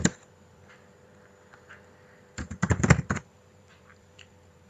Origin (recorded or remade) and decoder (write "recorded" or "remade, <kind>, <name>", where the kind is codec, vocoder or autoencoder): remade, vocoder, BigVGAN v2